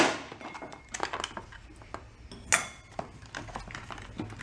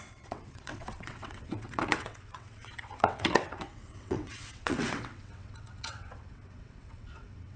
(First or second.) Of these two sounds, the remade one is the second